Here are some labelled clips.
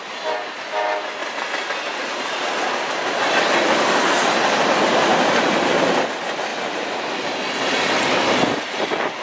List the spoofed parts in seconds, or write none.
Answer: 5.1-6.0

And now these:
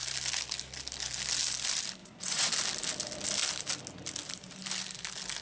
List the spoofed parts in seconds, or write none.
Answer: 2.0-2.5

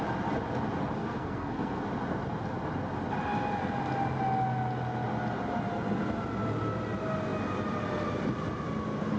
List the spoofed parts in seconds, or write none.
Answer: 1.0-1.8

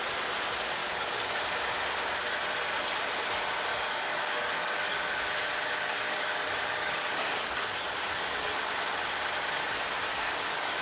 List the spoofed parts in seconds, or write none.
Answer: 0.8-1.4; 3.7-8.6; 10.1-10.8